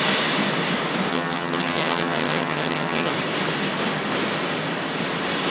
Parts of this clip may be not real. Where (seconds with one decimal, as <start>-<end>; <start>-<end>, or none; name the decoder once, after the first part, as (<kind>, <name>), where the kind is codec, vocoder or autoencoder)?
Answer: 1.1-3.1 (vocoder, HiFi-GAN)